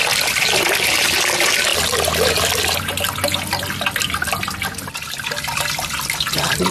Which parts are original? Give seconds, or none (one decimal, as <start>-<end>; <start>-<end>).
0.0-6.7